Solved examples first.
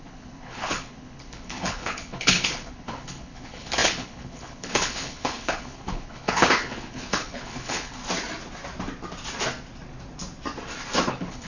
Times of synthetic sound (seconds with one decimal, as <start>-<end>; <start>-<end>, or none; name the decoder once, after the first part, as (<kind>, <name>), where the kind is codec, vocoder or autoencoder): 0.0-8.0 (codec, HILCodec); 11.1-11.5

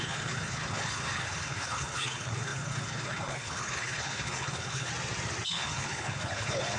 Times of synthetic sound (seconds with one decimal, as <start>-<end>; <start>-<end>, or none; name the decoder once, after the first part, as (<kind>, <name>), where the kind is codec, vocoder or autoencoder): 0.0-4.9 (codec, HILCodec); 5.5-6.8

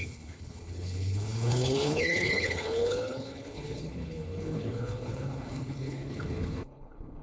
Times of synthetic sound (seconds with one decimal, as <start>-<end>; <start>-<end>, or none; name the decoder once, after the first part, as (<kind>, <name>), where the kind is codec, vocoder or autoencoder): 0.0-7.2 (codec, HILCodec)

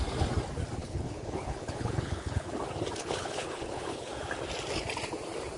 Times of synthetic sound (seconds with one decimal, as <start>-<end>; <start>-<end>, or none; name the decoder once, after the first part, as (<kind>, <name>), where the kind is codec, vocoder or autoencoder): 0.8-2.6 (codec, HILCodec); 3.0-4.1

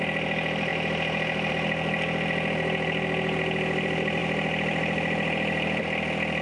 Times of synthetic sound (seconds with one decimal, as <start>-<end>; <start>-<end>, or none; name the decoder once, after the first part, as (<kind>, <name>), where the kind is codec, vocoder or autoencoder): none

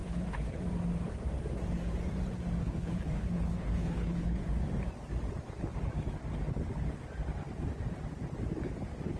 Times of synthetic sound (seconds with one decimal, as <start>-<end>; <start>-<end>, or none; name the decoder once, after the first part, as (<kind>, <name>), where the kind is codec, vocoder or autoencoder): 0.0-0.6 (codec, HILCodec); 2.6-4.4

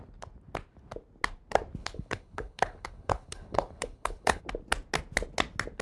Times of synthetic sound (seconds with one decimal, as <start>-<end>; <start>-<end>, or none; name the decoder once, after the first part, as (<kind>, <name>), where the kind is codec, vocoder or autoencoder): 1.8-4.4 (codec, HILCodec)